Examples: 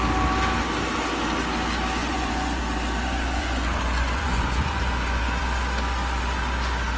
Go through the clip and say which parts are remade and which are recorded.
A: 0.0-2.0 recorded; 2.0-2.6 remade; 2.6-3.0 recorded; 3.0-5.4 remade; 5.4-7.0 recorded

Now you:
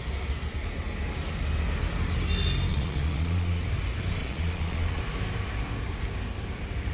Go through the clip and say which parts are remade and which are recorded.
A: 0.0-2.7 recorded; 2.7-3.6 remade; 3.6-4.2 recorded; 4.2-5.0 remade; 5.0-6.9 recorded

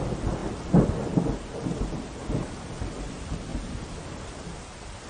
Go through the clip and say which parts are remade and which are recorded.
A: 0.0-5.1 recorded

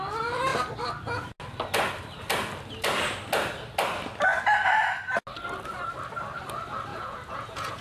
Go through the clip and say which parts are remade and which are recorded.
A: 0.0-6.9 recorded; 6.9-7.8 remade